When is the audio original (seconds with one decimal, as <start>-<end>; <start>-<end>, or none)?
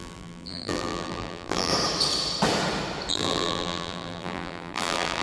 1.7-3.1